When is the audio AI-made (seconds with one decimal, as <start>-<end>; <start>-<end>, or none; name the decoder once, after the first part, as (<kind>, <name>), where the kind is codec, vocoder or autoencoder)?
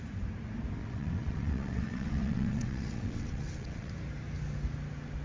0.8-3.9 (vocoder, WaveNeXt)